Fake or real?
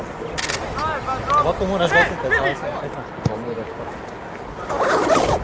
real